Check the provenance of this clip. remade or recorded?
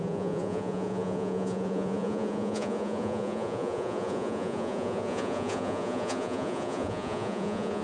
remade